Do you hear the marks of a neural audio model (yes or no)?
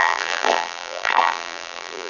yes